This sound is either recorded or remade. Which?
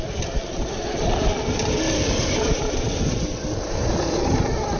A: recorded